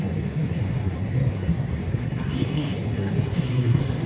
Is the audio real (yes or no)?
no